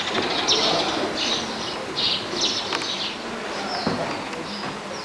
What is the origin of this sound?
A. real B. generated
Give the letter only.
A